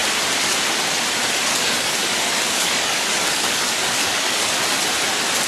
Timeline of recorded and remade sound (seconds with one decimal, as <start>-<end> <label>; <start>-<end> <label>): 0.0-1.5 recorded; 1.5-4.8 remade; 4.8-5.5 recorded